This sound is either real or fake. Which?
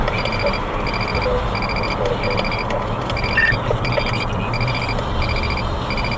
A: real